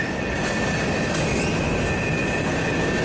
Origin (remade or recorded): recorded